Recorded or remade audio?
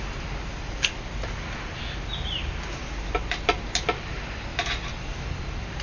recorded